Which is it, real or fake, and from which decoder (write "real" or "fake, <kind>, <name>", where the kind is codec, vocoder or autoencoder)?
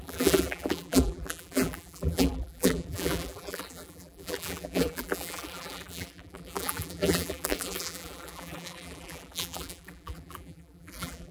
fake, vocoder, BigVGAN v2